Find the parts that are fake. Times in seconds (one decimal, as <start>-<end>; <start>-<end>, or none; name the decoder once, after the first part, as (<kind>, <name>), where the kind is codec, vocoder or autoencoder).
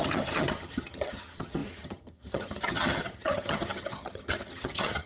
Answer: 0.0-5.1 (vocoder, HiFi-GAN)